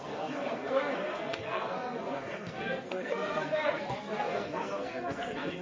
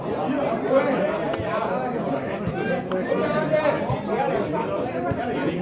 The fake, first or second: first